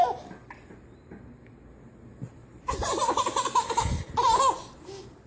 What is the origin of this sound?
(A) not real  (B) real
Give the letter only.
B